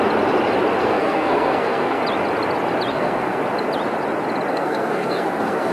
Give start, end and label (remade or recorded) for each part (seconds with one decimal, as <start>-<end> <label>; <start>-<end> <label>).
0.0-0.8 recorded; 0.8-2.0 remade; 2.0-2.9 recorded; 2.9-3.4 remade; 3.4-4.5 recorded; 4.5-5.7 remade